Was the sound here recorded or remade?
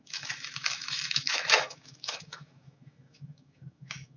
remade